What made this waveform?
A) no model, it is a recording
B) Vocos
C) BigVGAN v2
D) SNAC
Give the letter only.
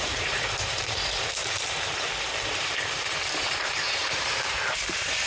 C